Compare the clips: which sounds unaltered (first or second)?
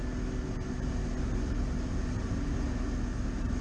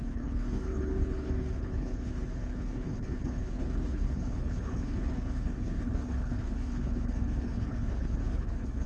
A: first